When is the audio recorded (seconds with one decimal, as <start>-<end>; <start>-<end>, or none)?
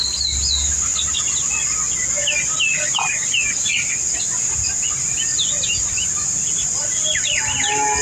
0.0-8.0